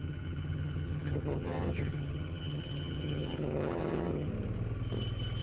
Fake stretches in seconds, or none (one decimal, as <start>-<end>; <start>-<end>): 0.0-4.3